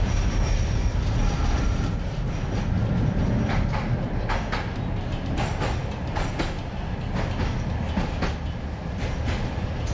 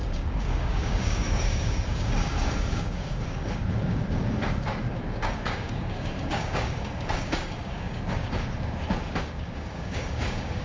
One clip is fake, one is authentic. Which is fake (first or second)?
second